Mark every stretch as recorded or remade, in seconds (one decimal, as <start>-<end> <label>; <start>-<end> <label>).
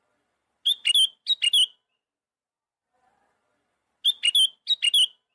0.0-5.3 recorded